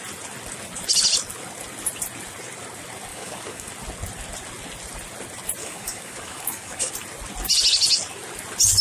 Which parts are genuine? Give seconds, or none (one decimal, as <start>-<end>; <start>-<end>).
0.0-3.1; 3.7-5.6; 6.9-8.8